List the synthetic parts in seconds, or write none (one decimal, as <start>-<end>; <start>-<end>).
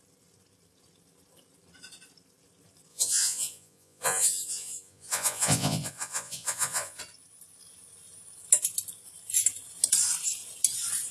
2.9-7.0